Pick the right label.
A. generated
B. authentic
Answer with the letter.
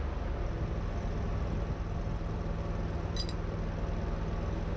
B